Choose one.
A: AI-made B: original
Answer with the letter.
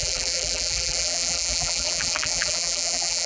A